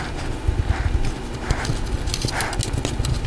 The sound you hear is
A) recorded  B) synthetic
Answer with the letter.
A